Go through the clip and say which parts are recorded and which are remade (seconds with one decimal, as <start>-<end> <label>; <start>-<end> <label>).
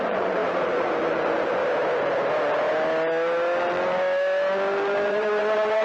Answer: 0.0-1.6 remade; 1.6-5.1 recorded; 5.1-5.8 remade